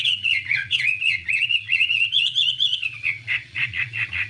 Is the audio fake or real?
fake